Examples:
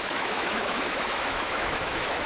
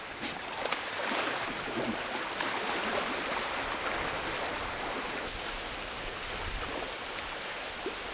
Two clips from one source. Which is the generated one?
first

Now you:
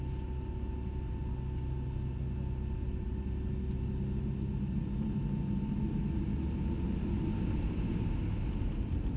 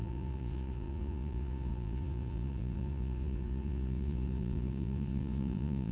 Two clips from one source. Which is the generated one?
second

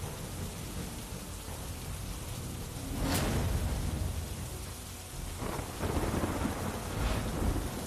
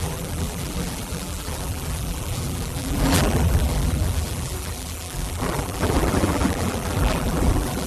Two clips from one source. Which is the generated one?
second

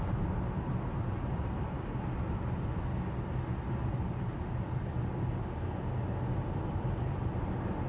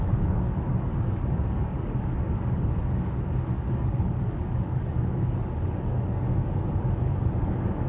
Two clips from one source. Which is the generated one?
second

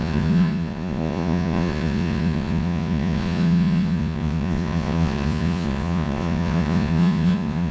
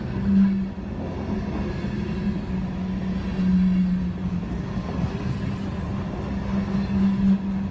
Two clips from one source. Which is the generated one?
first